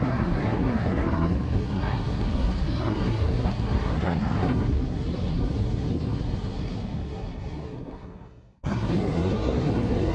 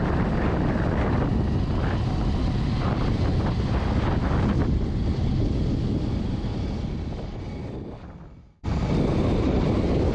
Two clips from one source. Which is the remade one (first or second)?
first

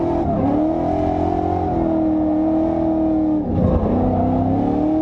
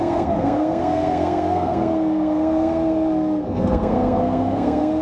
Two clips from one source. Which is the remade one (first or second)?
second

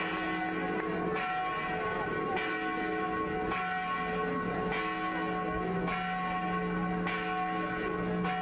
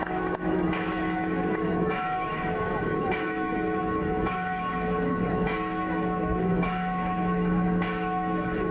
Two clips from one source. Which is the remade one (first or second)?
second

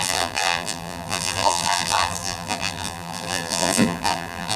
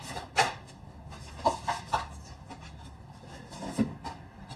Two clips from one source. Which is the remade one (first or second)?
first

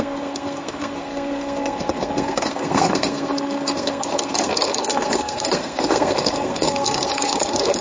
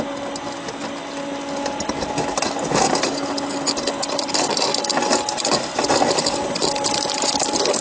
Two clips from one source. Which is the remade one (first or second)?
first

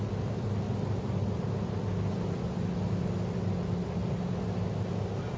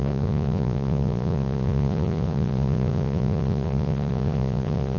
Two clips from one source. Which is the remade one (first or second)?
second